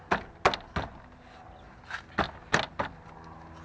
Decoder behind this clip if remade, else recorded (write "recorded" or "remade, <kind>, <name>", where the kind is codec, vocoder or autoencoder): recorded